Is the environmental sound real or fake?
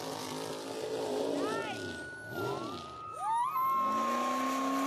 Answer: real